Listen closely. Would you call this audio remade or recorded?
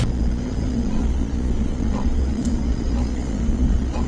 remade